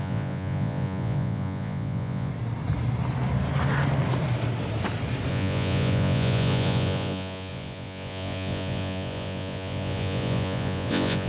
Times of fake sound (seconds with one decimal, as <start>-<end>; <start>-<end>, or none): 0.0-2.3; 5.3-11.3